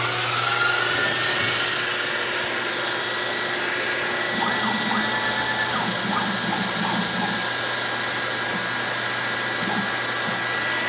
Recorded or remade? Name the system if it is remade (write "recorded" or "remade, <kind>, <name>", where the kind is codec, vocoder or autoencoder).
recorded